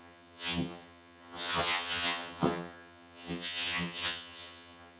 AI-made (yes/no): yes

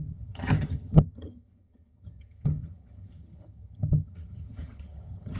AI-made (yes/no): yes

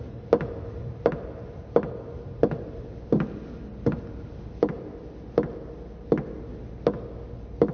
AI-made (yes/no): no